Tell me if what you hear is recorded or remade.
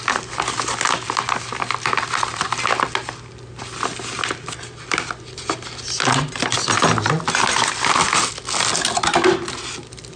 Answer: recorded